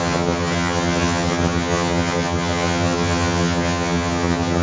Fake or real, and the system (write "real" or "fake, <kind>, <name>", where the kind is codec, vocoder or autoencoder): fake, vocoder, HiFi-GAN